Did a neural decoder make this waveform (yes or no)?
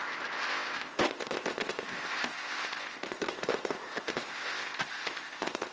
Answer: yes